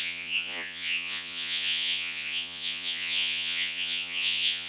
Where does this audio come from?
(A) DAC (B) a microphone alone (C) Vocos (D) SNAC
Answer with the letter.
C